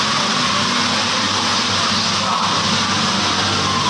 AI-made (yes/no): no